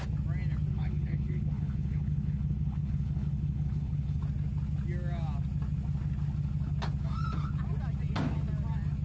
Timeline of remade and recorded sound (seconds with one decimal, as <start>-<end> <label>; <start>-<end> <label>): 0.0-0.7 recorded; 0.7-4.2 remade; 4.2-9.0 recorded